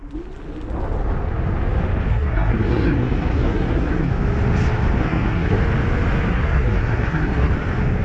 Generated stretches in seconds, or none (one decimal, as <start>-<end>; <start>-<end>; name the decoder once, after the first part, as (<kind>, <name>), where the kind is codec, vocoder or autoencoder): 2.1-4.1 (codec, SNAC); 5.0-5.6; 6.3-7.5